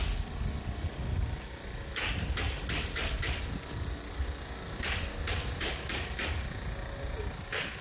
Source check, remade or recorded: recorded